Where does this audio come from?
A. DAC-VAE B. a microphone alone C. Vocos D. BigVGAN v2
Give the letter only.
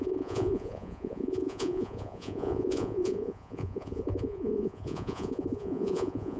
C